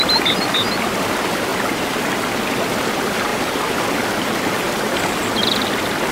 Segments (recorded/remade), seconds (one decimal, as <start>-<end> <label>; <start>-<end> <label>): 0.0-6.1 recorded